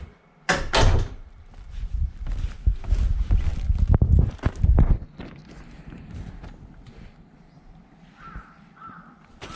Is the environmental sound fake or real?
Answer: real